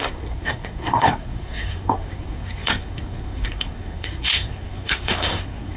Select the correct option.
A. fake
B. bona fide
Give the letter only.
A